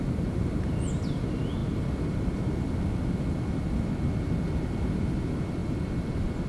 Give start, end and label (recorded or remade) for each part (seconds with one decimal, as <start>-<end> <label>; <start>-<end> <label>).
0.0-6.5 recorded